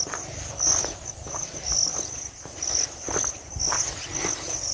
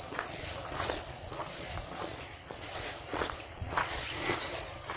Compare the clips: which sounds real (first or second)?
first